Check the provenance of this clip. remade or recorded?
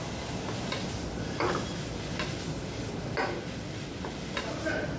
recorded